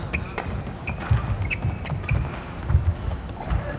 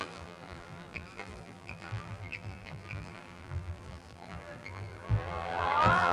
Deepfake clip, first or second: second